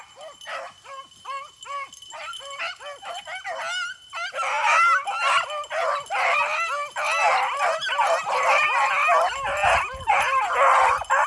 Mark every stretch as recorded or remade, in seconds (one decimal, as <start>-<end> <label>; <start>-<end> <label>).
0.0-11.3 recorded